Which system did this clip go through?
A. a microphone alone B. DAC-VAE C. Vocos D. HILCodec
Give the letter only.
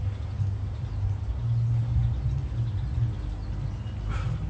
A